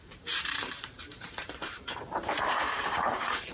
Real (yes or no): no